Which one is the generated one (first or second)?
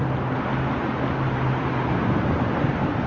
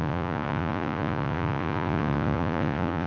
second